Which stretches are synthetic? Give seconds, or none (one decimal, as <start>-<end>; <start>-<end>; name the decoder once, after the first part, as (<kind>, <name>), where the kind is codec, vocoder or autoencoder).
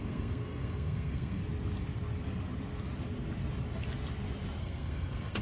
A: 0.0-1.4 (codec, SNAC); 4.6-5.4